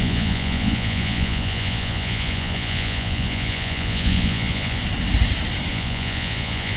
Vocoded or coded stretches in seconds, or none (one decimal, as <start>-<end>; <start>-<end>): 0.0-4.8; 5.7-6.8